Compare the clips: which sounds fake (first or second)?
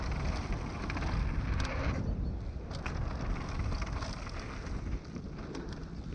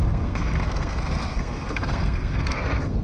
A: second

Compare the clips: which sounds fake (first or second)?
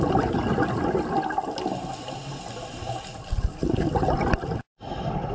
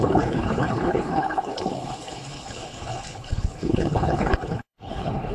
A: second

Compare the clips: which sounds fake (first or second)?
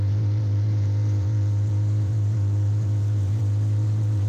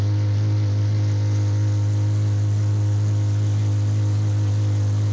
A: first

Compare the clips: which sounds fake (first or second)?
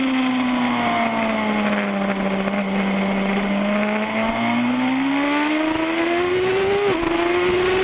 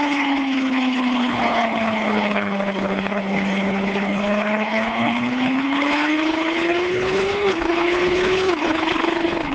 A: second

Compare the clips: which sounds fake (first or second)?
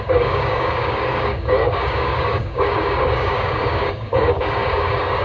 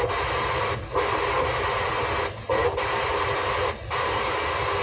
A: first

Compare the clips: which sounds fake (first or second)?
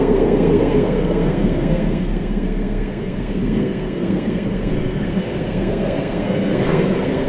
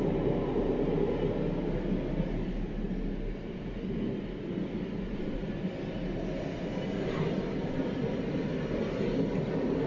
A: first